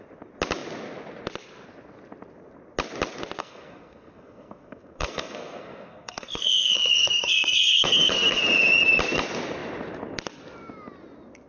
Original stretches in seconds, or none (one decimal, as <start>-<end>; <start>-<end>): 0.0-3.4; 8.4-11.5